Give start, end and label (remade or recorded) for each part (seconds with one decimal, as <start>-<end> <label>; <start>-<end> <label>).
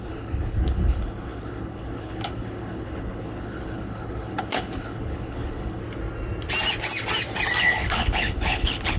0.0-5.8 remade; 5.8-7.6 recorded; 7.6-9.0 remade